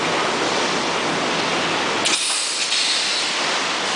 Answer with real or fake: real